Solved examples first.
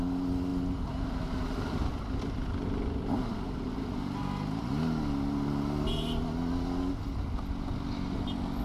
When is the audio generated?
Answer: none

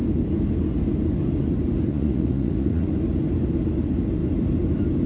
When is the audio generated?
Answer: 1.9-2.9 (vocoder, Vocos)

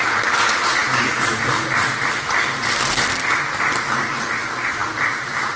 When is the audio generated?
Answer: none

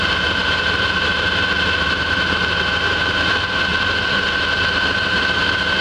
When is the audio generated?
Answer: 0.0-3.7 (vocoder, BigVGAN v2); 4.8-5.8